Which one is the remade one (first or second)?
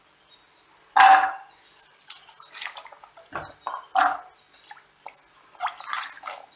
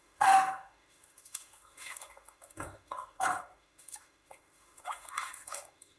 second